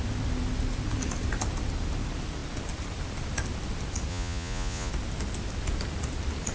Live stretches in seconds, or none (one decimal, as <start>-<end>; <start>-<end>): 0.0-4.1; 4.9-6.5